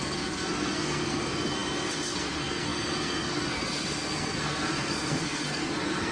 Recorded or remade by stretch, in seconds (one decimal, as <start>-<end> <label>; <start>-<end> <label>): 0.0-6.1 remade